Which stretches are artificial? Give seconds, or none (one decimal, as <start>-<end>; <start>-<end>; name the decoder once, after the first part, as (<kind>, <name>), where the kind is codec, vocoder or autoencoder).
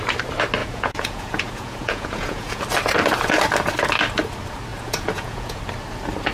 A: 0.6-2.6 (vocoder, Vocos); 4.7-5.6